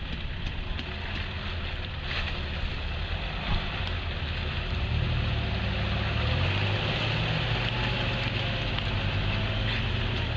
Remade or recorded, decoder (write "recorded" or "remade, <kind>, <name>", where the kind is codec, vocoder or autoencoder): recorded